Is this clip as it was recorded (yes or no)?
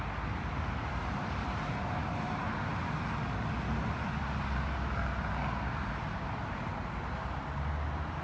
yes